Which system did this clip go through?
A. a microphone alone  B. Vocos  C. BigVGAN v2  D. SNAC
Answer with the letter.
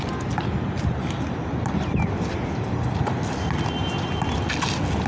A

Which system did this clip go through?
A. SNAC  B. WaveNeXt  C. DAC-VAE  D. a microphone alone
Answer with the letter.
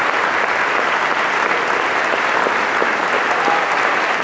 D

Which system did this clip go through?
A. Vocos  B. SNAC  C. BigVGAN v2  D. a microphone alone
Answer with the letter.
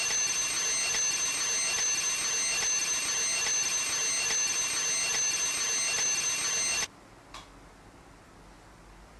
D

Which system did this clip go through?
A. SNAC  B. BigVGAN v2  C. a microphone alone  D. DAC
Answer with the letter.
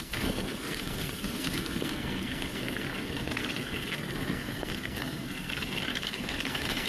A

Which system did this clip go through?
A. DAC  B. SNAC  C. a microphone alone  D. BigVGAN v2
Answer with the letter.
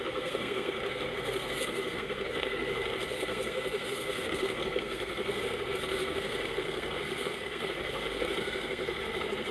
B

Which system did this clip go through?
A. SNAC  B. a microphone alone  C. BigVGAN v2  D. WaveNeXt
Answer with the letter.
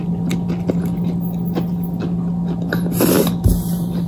B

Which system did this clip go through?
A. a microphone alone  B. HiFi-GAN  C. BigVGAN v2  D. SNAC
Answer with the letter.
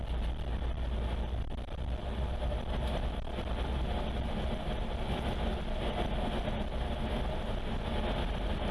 A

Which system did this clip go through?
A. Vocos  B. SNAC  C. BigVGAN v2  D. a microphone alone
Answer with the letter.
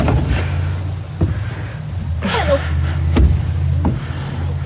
D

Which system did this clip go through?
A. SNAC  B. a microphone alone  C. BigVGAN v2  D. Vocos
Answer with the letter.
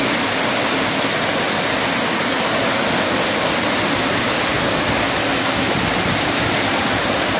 B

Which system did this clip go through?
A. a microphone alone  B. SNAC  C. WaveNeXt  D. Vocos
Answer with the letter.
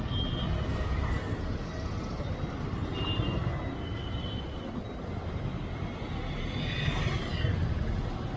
A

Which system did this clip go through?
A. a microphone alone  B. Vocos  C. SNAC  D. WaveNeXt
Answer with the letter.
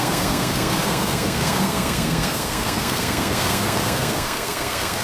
C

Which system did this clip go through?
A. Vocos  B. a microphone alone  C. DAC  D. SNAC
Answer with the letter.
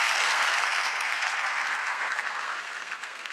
D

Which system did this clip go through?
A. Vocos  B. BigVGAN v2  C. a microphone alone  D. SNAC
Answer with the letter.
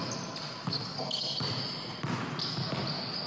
C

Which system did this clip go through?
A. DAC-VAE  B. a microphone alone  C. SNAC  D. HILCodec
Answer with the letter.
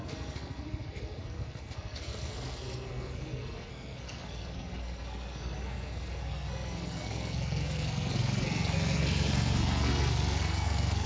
C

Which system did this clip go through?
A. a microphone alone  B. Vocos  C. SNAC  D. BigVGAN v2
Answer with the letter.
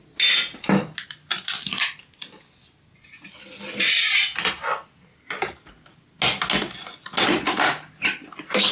A